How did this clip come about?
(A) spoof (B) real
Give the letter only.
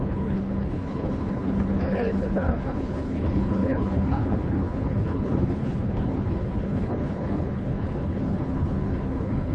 A